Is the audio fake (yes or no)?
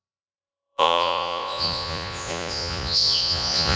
yes